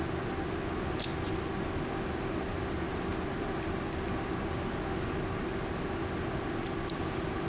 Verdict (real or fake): real